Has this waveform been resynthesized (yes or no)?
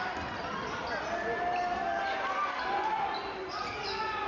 no